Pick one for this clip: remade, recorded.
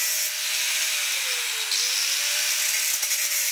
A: recorded